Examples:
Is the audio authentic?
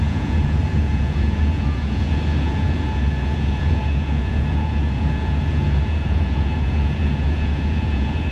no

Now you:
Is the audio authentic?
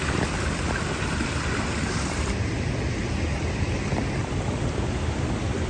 yes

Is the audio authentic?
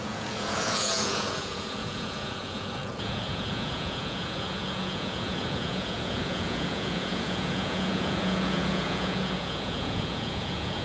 no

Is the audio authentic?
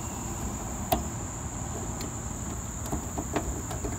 yes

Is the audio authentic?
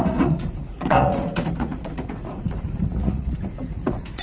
no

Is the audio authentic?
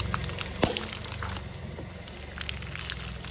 yes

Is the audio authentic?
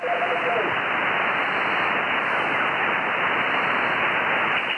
yes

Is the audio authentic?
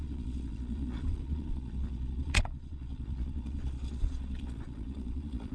no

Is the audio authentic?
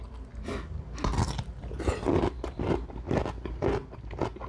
yes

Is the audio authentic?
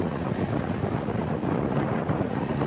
no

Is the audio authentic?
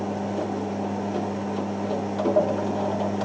yes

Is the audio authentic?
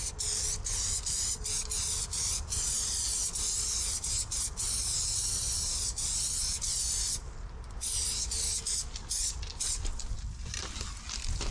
yes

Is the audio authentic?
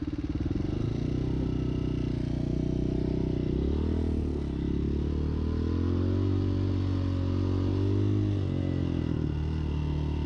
yes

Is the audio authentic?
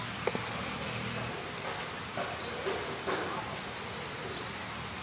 yes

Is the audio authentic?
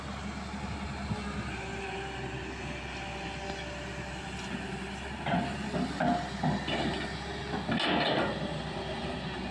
yes